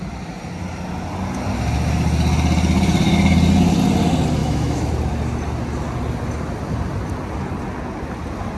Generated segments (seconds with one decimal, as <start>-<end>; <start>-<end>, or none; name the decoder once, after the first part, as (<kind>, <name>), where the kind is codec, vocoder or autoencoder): 4.4-4.9 (autoencoder, DAC-VAE)